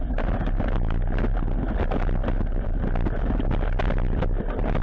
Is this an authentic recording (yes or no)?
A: yes